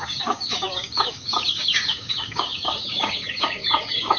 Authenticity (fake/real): fake